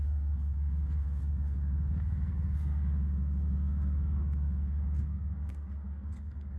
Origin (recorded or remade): remade